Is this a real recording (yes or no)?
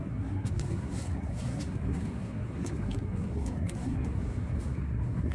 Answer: no